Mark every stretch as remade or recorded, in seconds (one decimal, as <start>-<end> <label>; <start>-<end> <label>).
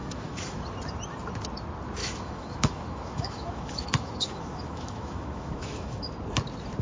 0.0-0.6 remade; 0.6-2.0 recorded; 2.0-6.1 remade; 6.1-6.8 recorded